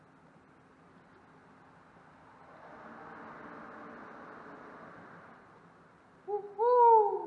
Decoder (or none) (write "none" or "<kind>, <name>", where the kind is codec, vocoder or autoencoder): none